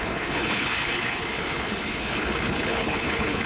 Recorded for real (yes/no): no